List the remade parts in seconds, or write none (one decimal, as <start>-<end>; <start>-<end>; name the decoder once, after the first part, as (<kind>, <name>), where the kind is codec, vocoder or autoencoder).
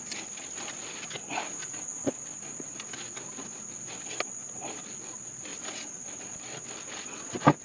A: 4.4-4.9 (vocoder, BigVGAN v2)